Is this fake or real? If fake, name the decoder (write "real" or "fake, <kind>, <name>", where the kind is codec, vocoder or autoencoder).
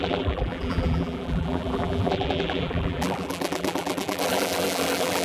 fake, vocoder, BigVGAN v2